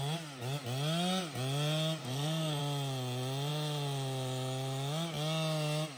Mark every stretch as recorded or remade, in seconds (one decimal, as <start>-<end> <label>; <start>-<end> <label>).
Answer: 0.0-2.0 recorded; 2.0-2.6 remade; 2.6-6.0 recorded